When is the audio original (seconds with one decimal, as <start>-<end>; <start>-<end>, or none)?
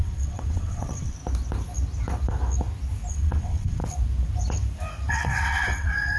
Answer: 1.2-3.1; 3.8-5.1